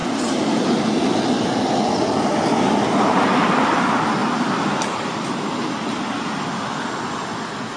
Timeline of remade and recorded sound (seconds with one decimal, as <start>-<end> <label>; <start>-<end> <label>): 0.0-7.8 recorded

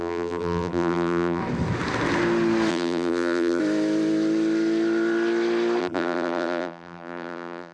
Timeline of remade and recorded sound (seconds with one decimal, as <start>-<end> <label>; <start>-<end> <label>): 0.0-1.4 remade; 1.4-2.7 recorded; 2.7-3.6 remade; 3.6-5.8 recorded; 5.8-7.7 remade